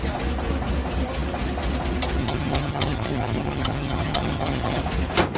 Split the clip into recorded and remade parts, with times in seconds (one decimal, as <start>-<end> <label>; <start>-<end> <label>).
0.0-2.2 recorded; 2.2-4.8 remade; 4.8-5.4 recorded